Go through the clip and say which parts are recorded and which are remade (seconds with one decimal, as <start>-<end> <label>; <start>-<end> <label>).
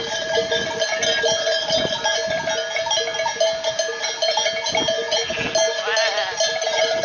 0.0-7.0 recorded